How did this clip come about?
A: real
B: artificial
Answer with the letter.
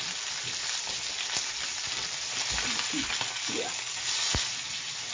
A